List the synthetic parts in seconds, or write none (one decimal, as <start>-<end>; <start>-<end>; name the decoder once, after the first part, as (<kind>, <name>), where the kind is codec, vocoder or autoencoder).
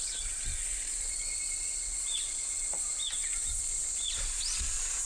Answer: 0.0-5.1 (vocoder, Vocos)